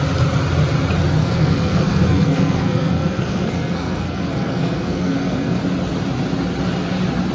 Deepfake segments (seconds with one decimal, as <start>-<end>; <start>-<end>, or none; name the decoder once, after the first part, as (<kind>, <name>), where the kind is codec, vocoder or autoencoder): 1.2-5.6 (codec, SNAC)